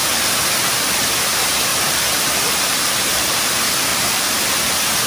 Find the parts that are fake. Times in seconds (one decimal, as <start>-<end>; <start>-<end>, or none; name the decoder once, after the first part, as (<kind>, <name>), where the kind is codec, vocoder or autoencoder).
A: 1.7-3.5 (vocoder, BigVGAN v2); 3.9-4.4